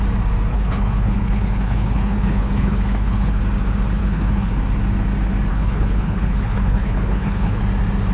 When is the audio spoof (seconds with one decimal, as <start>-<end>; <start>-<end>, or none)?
0.5-3.4; 4.0-4.5; 5.5-7.6